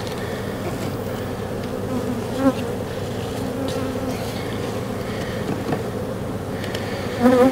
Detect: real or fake real